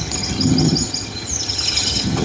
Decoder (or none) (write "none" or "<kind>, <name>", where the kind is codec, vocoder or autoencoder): vocoder, HiFi-GAN